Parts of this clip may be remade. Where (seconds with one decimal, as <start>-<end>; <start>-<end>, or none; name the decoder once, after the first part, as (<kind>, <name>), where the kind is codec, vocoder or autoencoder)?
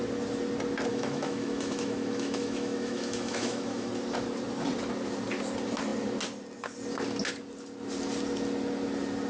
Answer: 0.9-3.9 (autoencoder, DAC-VAE)